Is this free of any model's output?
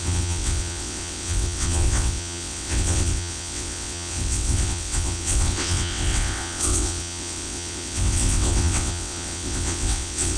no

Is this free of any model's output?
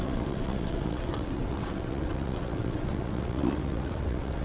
no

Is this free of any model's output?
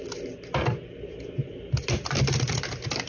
yes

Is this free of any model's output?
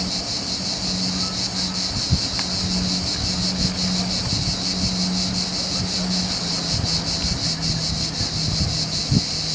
yes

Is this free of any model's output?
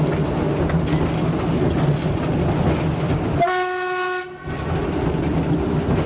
yes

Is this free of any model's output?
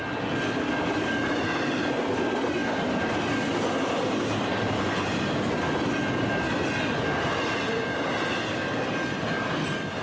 yes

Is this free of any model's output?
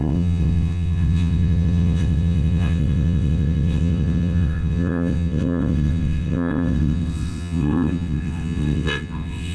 no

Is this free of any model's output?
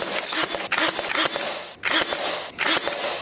yes